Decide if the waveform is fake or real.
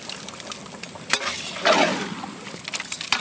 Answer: real